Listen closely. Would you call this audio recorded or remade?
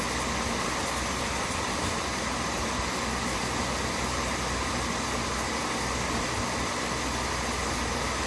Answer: recorded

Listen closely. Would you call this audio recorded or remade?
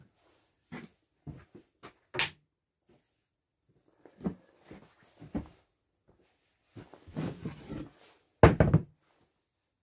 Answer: recorded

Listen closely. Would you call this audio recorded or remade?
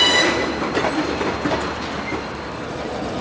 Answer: recorded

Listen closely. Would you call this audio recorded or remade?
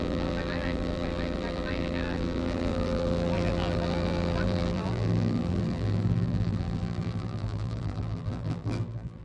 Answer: remade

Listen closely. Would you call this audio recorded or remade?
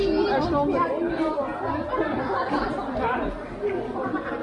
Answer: recorded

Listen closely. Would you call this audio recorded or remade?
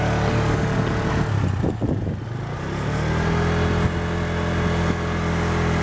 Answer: recorded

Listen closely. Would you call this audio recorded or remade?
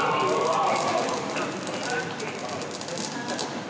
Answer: recorded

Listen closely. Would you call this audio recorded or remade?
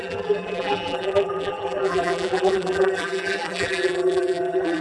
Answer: remade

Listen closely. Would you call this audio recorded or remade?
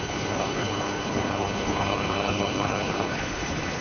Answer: remade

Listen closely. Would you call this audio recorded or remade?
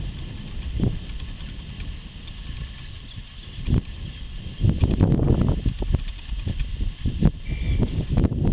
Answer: recorded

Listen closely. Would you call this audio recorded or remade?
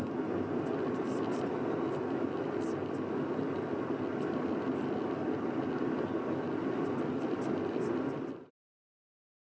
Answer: recorded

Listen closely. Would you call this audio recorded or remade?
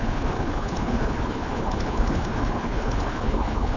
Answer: remade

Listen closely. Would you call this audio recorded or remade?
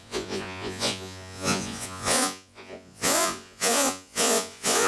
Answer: remade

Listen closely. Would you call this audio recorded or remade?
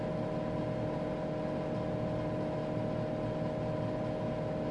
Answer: recorded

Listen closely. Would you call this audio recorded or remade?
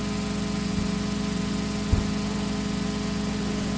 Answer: recorded